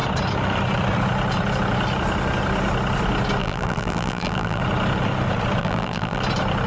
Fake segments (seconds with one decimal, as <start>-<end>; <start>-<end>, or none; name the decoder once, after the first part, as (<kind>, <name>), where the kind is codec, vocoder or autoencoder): 3.4-4.6 (vocoder, BigVGAN v2); 5.6-6.2